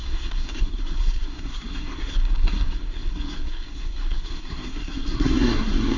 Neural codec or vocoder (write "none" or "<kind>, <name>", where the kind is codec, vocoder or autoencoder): codec, SNAC